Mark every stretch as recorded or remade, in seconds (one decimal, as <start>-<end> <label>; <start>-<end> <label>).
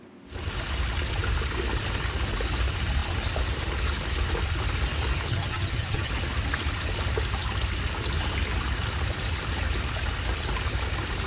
0.0-5.3 recorded; 5.3-6.1 remade; 6.1-11.3 recorded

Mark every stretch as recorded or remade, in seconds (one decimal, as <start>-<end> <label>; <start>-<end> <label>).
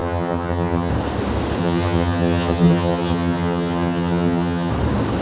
0.0-0.9 remade; 0.9-1.6 recorded; 1.6-4.7 remade; 4.7-5.2 recorded